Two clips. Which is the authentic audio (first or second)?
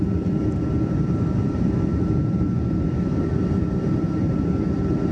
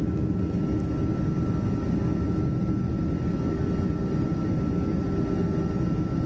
second